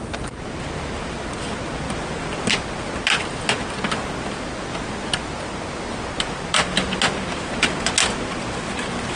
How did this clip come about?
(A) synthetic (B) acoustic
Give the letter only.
B